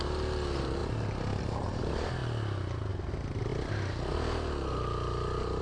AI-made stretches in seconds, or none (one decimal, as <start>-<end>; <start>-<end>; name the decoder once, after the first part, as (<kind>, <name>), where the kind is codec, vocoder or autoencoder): none